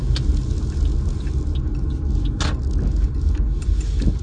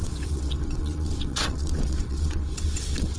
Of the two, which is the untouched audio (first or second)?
first